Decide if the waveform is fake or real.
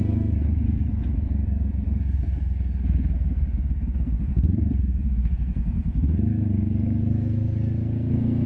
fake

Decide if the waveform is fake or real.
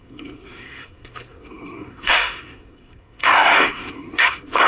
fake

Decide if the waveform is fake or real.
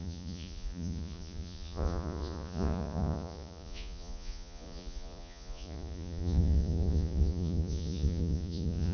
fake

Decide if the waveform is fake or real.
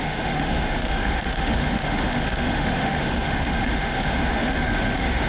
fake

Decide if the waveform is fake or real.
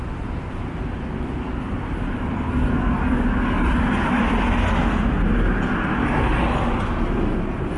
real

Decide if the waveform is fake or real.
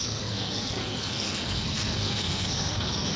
fake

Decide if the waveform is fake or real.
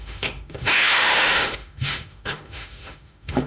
fake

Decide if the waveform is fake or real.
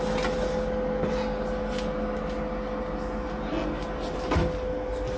real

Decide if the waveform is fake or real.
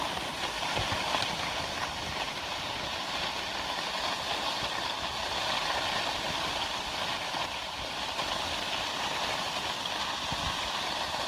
real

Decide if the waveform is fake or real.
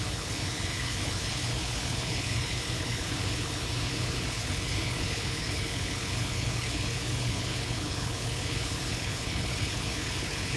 fake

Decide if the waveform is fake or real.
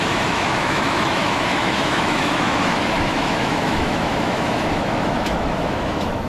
fake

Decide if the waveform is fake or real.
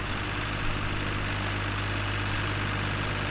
real